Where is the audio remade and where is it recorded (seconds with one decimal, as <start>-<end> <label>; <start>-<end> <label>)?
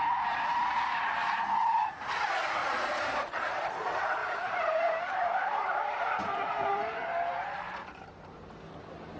0.0-2.6 recorded; 2.6-3.6 remade; 3.6-4.2 recorded; 4.2-6.2 remade; 6.2-6.7 recorded; 6.7-8.5 remade; 8.5-9.2 recorded